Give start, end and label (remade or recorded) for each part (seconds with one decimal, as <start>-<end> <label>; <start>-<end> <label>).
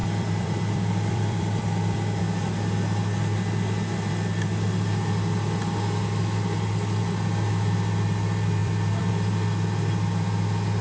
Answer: 0.0-2.2 remade; 2.2-8.6 recorded; 8.6-9.1 remade; 9.1-10.8 recorded